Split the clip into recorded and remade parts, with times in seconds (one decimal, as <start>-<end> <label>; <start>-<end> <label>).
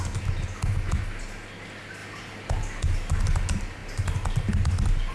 0.0-5.1 recorded